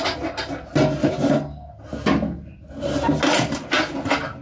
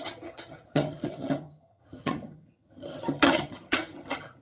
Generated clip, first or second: second